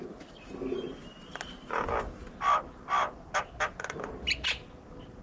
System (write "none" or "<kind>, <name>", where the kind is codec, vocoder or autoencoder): none